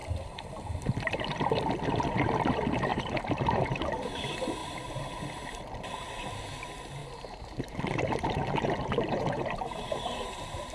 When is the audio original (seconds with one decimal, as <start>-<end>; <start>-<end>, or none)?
0.5-2.9; 3.9-4.6; 5.6-7.0